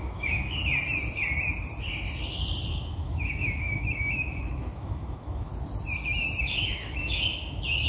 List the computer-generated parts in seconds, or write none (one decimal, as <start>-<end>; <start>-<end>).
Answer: 0.0-0.6; 2.7-5.5; 6.4-7.9